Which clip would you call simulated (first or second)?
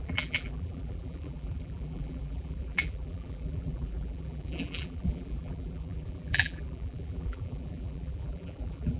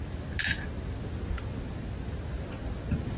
first